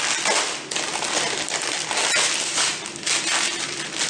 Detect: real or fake real